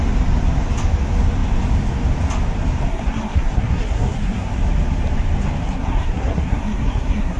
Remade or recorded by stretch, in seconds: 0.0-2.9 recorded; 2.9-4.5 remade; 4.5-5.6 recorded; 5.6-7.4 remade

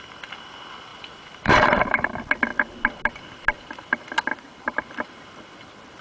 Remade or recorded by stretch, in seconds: 0.0-0.9 recorded; 0.9-2.1 remade; 2.1-4.3 recorded; 4.3-4.9 remade; 4.9-6.0 recorded

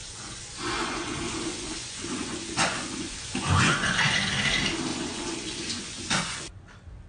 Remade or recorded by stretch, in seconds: 0.0-4.3 remade; 4.3-4.9 recorded; 4.9-6.5 remade; 6.5-7.1 recorded

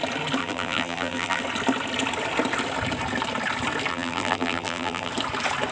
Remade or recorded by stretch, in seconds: 0.0-0.4 recorded; 0.4-1.4 remade; 1.4-3.9 recorded; 3.9-5.1 remade; 5.1-5.7 recorded

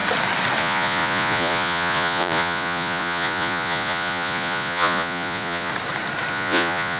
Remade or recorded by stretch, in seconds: 0.0-0.6 recorded; 0.6-5.7 remade; 5.7-6.3 recorded; 6.3-7.0 remade

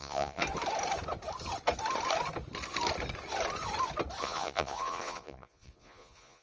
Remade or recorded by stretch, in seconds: 0.0-0.4 remade; 0.4-4.2 recorded; 4.2-6.4 remade